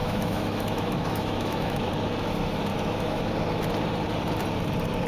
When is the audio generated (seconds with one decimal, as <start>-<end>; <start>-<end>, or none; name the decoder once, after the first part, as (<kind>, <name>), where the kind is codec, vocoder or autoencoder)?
0.0-1.9 (autoencoder, DAC-VAE); 2.7-3.2